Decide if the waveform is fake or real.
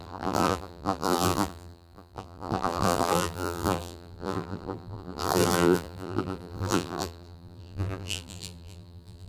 fake